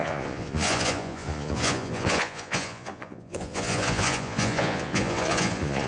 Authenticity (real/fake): fake